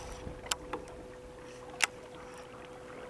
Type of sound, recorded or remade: recorded